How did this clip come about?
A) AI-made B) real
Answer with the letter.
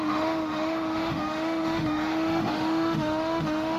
A